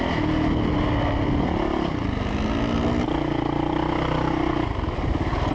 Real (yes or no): yes